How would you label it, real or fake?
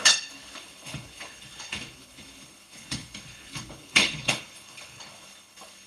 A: fake